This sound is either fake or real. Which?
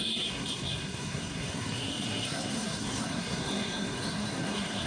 fake